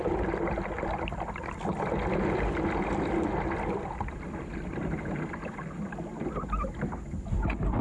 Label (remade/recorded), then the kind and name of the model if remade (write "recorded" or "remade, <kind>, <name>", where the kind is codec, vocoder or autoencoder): recorded